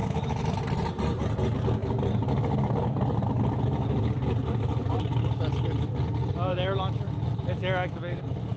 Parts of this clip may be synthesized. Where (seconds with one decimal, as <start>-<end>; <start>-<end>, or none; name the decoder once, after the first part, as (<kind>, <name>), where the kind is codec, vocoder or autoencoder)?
0.0-0.6 (autoencoder, DAC-VAE); 6.5-8.2

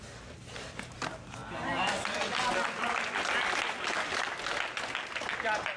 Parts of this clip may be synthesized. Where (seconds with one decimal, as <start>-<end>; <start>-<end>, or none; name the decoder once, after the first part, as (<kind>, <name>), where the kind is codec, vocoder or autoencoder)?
none